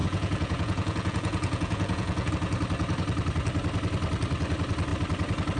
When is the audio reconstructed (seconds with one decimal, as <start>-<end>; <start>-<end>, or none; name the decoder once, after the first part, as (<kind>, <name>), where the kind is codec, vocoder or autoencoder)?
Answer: 0.0-2.3 (vocoder, Vocos)